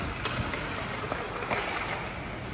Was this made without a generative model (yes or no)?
yes